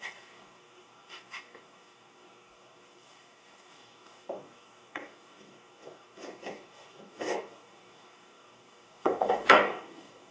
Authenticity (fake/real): fake